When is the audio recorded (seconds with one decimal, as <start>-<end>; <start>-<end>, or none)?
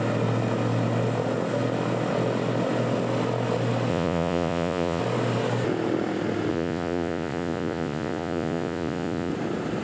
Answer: 0.0-3.9; 5.0-6.5; 9.3-9.8